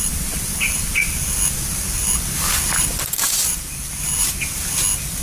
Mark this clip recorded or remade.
recorded